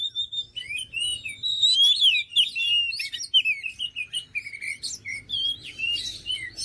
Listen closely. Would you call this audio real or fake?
real